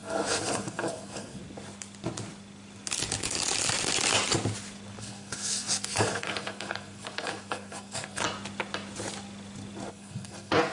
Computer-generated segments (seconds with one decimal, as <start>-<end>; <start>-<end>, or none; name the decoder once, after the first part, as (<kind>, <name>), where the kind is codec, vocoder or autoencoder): 0.0-1.4 (codec, SNAC); 5.0-8.2; 9.9-10.7

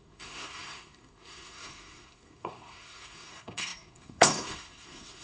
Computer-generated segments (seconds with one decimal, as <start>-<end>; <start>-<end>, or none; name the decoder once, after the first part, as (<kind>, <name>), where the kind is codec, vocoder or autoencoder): 0.0-5.2 (codec, SNAC)

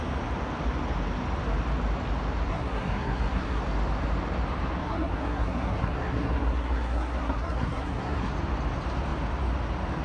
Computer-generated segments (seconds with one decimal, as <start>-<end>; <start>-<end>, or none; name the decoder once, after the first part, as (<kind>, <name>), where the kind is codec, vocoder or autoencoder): 2.5-3.6 (codec, SNAC); 4.8-8.3

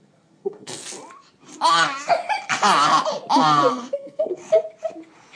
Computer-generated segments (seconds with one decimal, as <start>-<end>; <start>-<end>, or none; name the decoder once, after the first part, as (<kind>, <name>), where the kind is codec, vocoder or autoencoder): 0.0-0.8 (codec, SNAC); 3.7-4.4

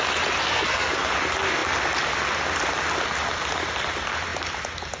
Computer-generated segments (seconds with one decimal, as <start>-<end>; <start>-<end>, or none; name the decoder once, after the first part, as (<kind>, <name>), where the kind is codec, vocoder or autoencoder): 0.4-1.1 (codec, SNAC)

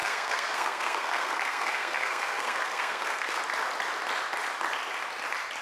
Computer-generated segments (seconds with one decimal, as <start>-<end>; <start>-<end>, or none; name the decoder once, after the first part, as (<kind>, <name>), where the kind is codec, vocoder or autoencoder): 0.0-3.4 (codec, SNAC)